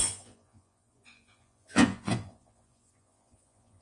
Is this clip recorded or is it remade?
remade